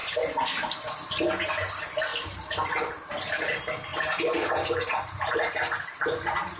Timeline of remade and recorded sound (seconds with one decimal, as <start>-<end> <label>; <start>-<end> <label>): 0.0-2.1 remade; 2.1-3.1 recorded; 3.1-6.6 remade